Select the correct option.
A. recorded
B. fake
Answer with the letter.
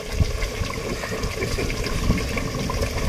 A